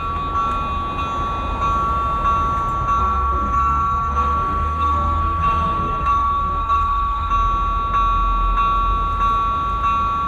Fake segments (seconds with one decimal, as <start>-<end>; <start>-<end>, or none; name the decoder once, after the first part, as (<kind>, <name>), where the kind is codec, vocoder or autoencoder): 3.0-7.3 (codec, SNAC)

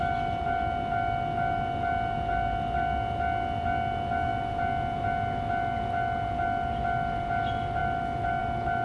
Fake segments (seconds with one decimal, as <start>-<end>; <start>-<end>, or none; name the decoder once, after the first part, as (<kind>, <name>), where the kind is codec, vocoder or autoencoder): none

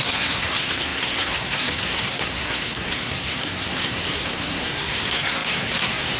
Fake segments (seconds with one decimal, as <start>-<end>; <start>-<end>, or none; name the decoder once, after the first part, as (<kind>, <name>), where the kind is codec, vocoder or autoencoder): 0.0-6.2 (codec, SNAC)

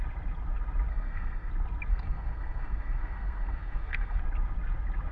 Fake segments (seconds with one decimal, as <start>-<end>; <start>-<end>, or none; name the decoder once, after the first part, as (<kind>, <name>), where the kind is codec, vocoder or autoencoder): 0.9-1.5 (codec, SNAC); 1.9-4.2

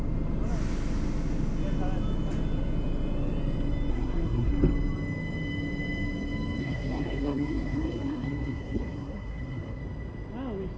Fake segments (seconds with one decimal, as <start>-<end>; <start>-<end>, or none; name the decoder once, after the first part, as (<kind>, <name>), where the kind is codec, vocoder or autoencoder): 3.9-4.5 (codec, SNAC); 6.6-9.8

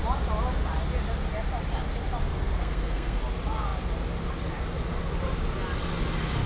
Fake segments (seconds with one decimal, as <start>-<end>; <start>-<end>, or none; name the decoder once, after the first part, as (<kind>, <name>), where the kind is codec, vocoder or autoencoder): 2.3-3.2 (codec, SNAC)

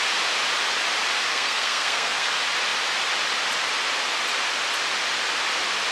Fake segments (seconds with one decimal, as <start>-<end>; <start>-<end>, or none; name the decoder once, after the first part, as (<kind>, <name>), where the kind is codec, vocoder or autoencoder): 1.3-2.3 (codec, SNAC)